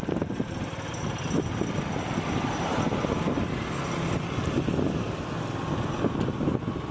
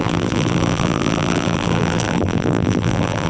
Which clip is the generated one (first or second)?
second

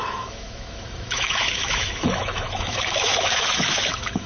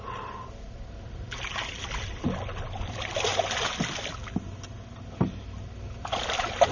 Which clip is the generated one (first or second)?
first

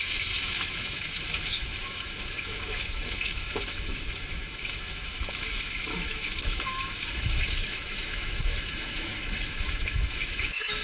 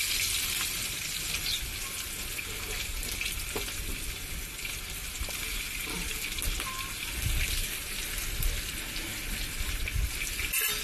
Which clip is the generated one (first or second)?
first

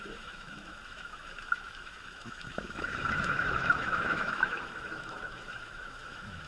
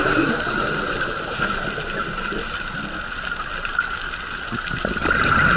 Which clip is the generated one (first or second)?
first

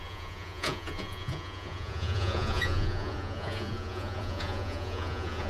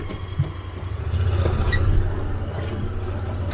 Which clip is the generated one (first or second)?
first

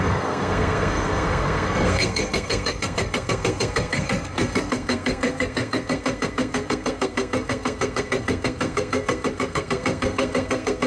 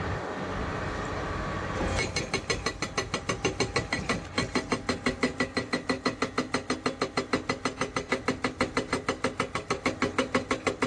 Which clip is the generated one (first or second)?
first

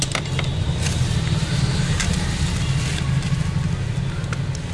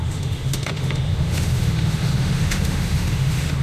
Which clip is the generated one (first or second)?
second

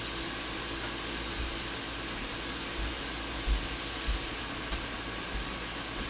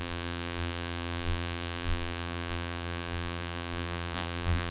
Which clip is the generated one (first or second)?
second